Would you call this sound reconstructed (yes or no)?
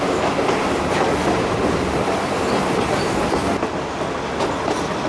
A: no